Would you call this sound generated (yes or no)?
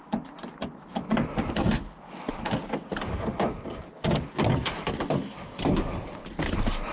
no